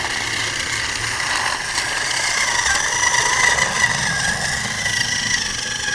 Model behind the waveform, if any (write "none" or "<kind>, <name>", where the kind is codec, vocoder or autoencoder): none